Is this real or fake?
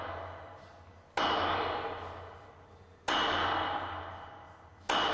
real